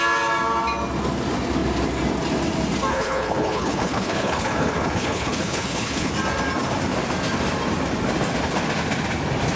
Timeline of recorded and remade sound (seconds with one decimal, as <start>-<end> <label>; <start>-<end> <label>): 0.0-2.9 recorded; 2.9-6.1 remade; 6.1-9.6 recorded